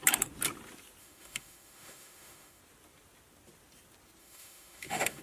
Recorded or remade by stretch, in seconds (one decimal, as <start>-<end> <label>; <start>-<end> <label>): 0.0-1.0 recorded; 1.0-2.6 remade; 2.6-4.2 recorded; 4.2-5.2 remade